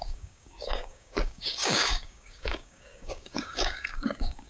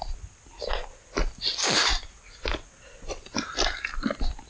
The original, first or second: second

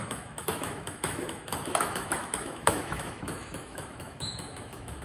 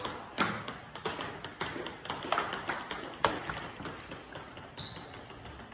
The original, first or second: second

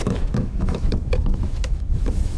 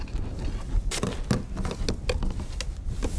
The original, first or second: second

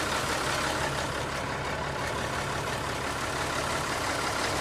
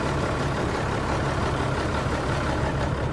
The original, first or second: first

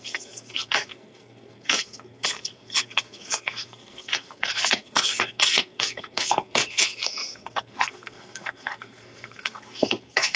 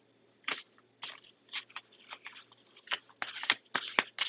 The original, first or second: second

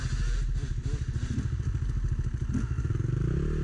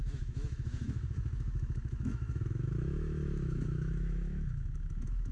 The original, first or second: first